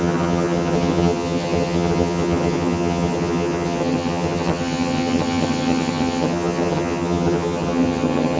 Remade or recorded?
remade